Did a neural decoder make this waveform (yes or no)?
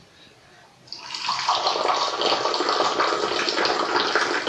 no